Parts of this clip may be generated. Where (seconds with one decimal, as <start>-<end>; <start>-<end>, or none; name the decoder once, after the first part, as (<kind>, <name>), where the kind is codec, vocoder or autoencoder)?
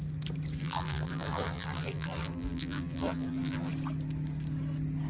0.6-3.7 (vocoder, BigVGAN v2)